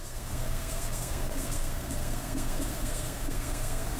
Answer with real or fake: fake